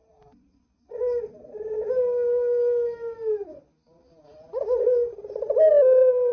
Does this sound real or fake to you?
real